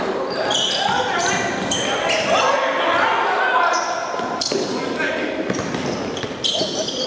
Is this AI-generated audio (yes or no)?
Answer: no